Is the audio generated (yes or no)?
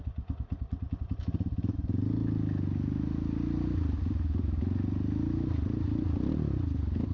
no